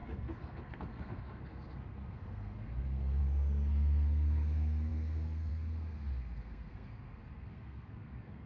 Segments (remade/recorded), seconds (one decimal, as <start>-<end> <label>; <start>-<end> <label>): 0.0-8.5 remade